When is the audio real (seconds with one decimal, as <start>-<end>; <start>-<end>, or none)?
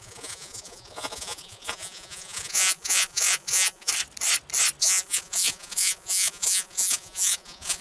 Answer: 3.9-4.8